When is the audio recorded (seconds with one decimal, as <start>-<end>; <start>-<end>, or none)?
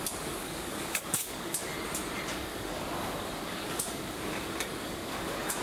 1.7-2.3